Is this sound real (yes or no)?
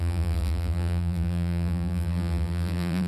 no